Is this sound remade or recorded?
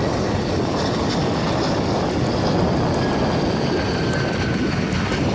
recorded